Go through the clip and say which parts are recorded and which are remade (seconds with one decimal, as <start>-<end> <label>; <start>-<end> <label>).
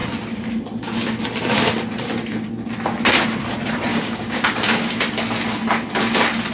0.0-3.9 recorded; 3.9-5.0 remade; 5.0-6.5 recorded